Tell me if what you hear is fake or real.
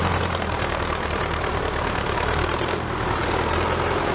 fake